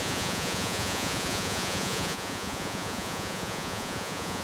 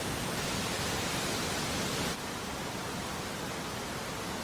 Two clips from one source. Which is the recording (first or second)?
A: second